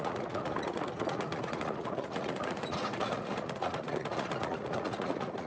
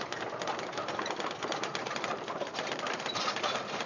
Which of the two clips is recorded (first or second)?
second